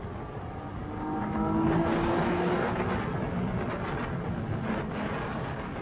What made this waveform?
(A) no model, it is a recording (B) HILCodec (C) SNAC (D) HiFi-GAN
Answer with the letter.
A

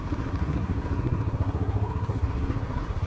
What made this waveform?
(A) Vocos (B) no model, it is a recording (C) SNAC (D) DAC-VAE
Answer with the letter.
C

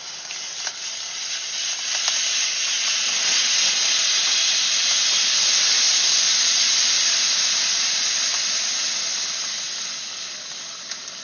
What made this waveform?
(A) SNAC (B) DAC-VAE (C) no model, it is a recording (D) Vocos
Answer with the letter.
C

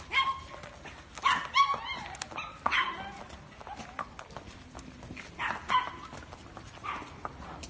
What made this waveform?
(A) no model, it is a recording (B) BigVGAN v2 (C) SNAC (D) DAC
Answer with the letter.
A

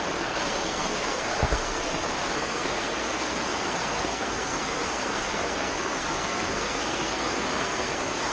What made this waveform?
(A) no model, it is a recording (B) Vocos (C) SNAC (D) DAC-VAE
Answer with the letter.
C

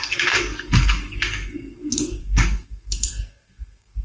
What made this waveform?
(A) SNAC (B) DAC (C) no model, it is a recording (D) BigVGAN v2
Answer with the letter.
A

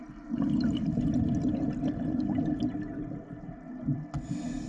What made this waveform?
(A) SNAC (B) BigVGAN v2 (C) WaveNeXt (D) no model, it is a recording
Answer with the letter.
D